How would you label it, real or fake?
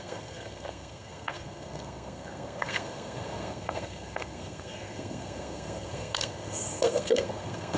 fake